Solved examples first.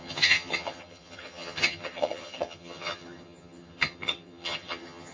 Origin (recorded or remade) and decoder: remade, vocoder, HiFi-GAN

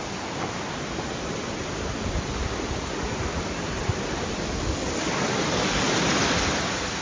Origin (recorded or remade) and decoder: recorded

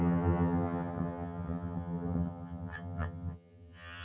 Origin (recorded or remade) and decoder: remade, vocoder, HiFi-GAN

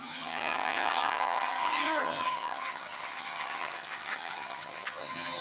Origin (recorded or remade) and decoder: remade, vocoder, HiFi-GAN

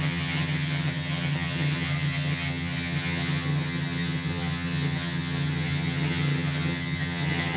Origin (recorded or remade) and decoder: remade, vocoder, HiFi-GAN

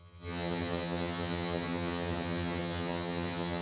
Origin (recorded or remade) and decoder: remade, vocoder, HiFi-GAN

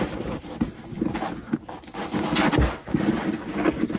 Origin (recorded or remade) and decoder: recorded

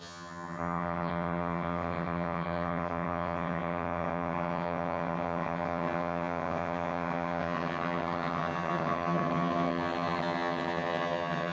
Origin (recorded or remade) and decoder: remade, vocoder, HiFi-GAN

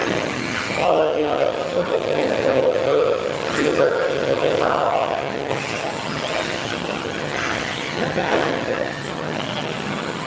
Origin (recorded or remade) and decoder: remade, vocoder, HiFi-GAN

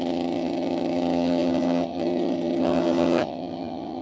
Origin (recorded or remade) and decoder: remade, vocoder, HiFi-GAN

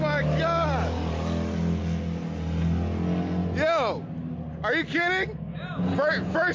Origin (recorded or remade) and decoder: recorded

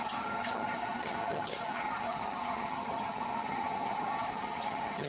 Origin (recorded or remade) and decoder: remade, vocoder, HiFi-GAN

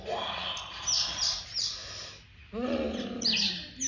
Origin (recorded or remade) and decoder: recorded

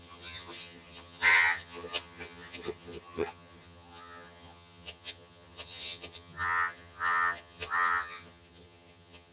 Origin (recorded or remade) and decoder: remade, vocoder, HiFi-GAN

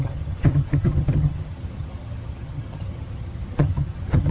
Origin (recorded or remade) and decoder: remade, vocoder, HiFi-GAN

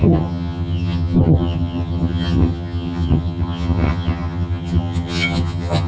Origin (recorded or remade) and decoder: remade, vocoder, HiFi-GAN